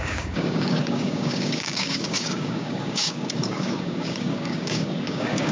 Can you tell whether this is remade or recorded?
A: remade